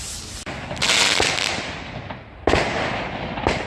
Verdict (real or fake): real